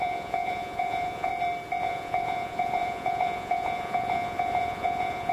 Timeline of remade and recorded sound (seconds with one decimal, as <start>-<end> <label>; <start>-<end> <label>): 0.0-1.3 remade; 1.3-1.8 recorded; 1.8-5.3 remade